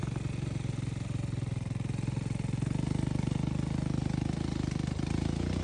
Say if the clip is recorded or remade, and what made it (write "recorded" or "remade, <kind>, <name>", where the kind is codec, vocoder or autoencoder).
recorded